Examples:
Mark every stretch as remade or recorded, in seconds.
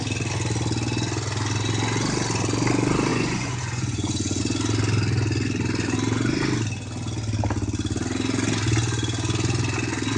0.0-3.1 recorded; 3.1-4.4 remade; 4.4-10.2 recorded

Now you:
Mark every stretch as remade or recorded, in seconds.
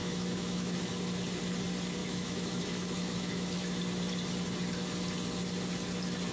0.0-0.9 remade; 0.9-2.0 recorded; 2.0-3.8 remade; 3.8-6.3 recorded